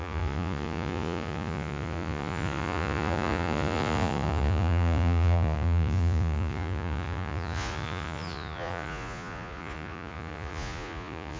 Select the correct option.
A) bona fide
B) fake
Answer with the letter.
B